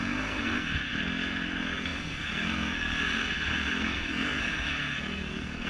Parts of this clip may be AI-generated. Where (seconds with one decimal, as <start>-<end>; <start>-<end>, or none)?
0.0-5.7